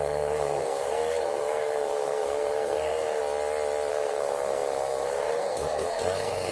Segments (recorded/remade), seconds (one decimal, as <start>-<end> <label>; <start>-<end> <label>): 0.0-3.2 remade; 3.2-3.9 recorded; 3.9-6.5 remade